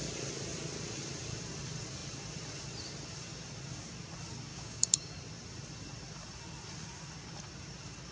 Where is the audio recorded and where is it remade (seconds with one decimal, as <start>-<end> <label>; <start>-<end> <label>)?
0.0-4.5 recorded; 4.5-5.1 remade; 5.1-8.1 recorded